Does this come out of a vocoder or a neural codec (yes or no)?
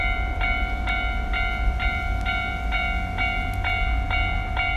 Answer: yes